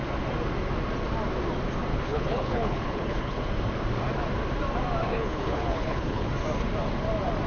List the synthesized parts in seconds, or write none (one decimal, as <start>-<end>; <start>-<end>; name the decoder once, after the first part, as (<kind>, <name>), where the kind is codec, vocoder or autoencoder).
1.9-3.4 (codec, HILCodec); 5.0-6.3